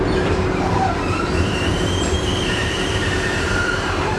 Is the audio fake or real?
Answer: fake